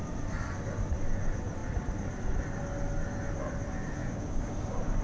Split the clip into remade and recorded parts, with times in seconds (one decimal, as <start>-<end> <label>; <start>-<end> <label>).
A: 0.0-4.0 recorded; 4.0-4.5 remade; 4.5-5.0 recorded